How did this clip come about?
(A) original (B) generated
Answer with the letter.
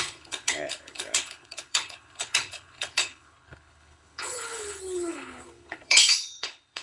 B